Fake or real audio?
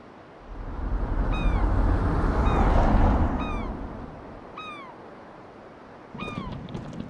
real